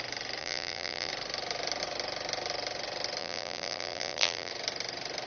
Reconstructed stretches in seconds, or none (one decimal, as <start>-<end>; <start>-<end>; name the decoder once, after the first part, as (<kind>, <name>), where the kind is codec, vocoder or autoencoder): 0.4-1.1 (vocoder, BigVGAN v2); 3.2-4.5